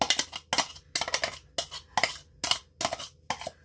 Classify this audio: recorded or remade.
recorded